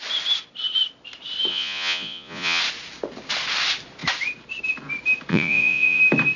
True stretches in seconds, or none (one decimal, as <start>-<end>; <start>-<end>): 0.0-1.5; 2.6-5.3; 6.0-6.4